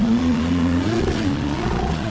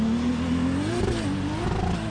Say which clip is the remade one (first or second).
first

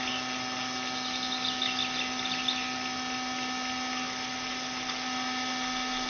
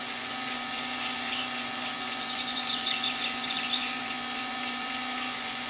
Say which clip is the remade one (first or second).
second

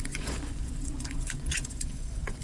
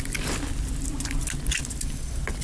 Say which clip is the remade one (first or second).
first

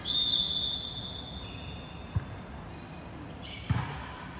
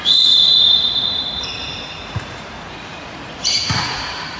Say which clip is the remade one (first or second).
second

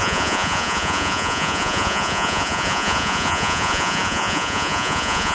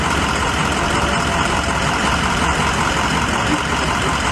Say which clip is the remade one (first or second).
first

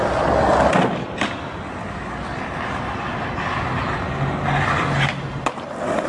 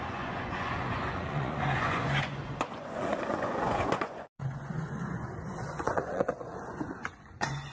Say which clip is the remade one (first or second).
second